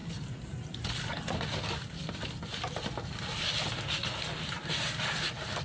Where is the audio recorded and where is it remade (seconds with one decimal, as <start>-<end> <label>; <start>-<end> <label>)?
0.0-5.6 recorded